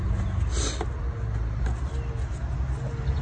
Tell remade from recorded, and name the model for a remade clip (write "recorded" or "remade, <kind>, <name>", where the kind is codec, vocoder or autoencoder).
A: recorded